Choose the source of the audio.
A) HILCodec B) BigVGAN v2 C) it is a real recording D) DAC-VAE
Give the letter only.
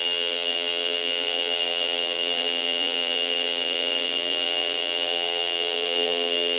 B